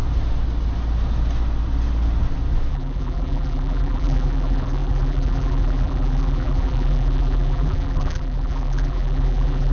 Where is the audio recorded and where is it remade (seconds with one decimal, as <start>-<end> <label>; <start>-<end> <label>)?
0.0-2.7 recorded; 2.7-9.7 remade